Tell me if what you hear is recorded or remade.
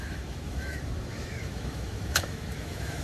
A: remade